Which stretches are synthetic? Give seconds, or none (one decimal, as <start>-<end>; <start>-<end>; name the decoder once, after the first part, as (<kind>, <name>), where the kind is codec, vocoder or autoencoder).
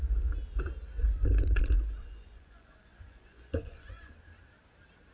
1.0-4.1 (vocoder, Vocos)